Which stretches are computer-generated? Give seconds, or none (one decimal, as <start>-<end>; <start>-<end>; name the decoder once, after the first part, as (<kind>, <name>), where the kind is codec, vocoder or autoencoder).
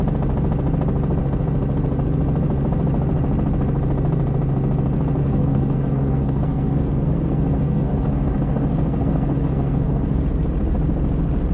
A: 5.2-10.2 (codec, SNAC)